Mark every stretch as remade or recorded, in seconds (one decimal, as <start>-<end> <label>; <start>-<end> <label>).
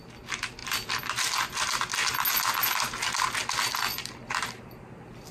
0.0-5.3 recorded